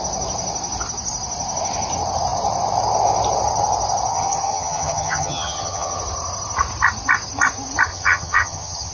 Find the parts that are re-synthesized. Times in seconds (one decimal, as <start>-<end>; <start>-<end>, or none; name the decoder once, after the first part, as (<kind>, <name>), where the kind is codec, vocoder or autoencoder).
4.1-6.0 (vocoder, HiFi-GAN); 7.9-8.9